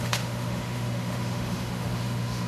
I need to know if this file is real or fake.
fake